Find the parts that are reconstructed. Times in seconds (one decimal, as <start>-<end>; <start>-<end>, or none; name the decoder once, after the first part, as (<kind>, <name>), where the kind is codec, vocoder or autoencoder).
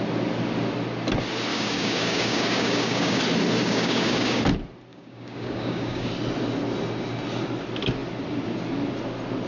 1.5-3.2 (codec, DAC); 3.6-4.4; 4.9-6.1